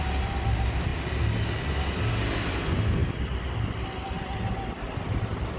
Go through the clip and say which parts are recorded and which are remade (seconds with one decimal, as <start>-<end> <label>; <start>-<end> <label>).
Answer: 0.0-5.6 recorded